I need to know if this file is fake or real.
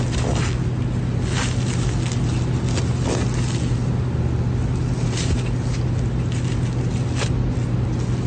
real